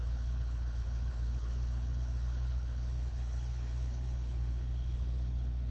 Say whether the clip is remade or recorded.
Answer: remade